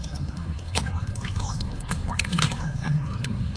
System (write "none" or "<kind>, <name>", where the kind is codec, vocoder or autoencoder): codec, SNAC